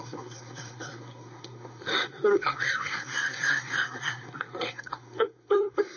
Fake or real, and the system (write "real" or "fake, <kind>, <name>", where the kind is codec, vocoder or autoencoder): fake, codec, SNAC